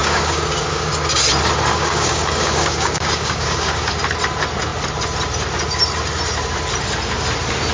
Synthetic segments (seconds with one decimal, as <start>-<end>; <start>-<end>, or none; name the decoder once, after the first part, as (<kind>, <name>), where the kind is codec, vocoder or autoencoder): 0.0-0.9 (codec, DAC); 1.7-3.9